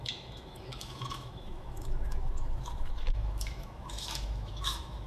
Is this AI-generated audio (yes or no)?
yes